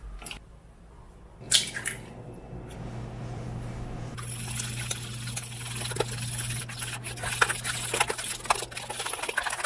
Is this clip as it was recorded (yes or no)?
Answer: yes